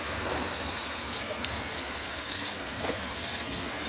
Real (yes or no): no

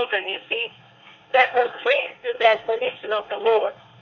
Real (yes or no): no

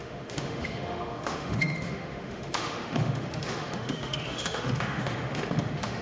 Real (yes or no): no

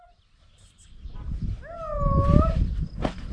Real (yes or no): yes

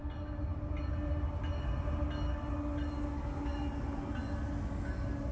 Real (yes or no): yes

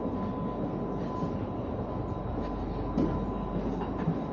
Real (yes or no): yes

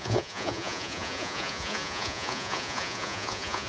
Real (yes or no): no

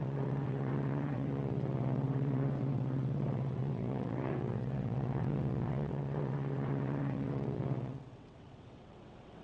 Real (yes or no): no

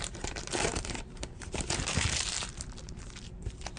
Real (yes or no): no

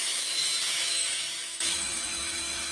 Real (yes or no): no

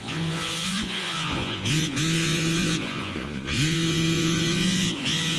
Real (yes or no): no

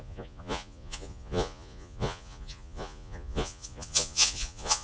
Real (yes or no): no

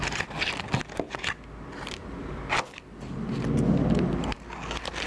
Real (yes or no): yes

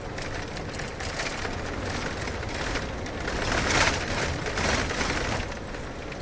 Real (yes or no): yes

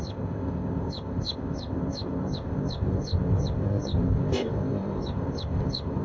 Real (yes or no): no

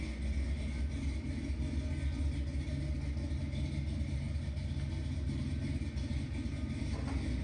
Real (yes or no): yes